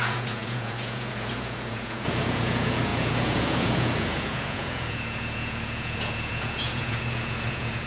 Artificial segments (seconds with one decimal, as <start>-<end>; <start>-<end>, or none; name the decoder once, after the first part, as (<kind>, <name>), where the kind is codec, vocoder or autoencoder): 0.0-7.9 (vocoder, Vocos)